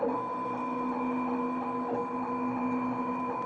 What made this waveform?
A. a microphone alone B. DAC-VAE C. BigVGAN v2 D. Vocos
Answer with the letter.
A